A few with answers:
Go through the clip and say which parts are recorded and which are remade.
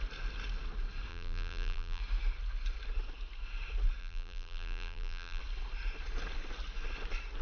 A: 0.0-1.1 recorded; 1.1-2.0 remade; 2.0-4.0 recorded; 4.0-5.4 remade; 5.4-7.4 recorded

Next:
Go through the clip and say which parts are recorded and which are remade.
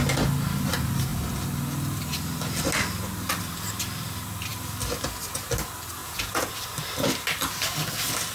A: 0.0-6.0 recorded; 6.0-6.5 remade; 6.5-8.3 recorded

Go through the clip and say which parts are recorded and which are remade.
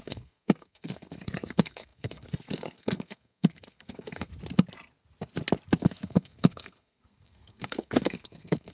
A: 0.0-4.3 remade; 4.3-5.7 recorded; 5.7-8.7 remade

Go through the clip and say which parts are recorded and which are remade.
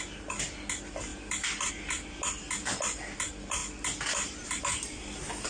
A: 0.0-1.1 recorded; 1.1-1.7 remade; 1.7-5.5 recorded